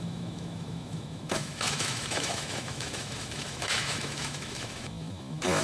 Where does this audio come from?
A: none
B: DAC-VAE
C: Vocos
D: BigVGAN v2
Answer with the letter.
B